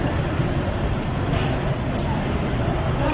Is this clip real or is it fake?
real